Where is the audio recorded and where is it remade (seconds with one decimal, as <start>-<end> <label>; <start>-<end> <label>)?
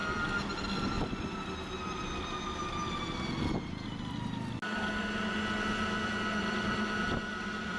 0.0-6.4 recorded; 6.4-7.8 remade